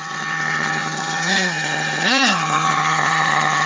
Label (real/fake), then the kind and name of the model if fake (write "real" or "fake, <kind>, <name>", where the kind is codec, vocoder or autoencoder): fake, vocoder, HiFi-GAN